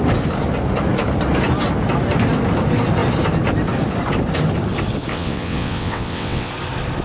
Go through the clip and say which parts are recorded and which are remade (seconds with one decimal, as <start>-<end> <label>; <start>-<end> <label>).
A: 0.0-5.1 recorded; 5.1-6.5 remade; 6.5-7.0 recorded